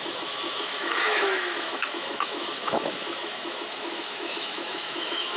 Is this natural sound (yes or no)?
no